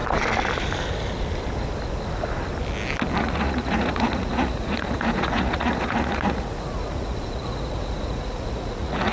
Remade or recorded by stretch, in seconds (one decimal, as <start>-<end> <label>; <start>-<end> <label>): 0.0-3.2 recorded; 3.2-9.1 remade